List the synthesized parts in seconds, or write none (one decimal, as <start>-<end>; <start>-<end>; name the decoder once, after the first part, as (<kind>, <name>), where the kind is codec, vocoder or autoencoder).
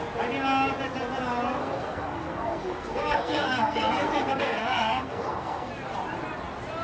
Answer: 1.6-5.7 (codec, SNAC)